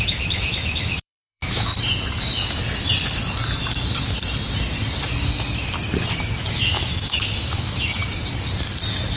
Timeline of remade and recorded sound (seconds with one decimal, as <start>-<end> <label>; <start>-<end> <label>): 0.0-1.7 remade; 1.7-6.2 recorded; 6.2-8.0 remade; 8.0-9.2 recorded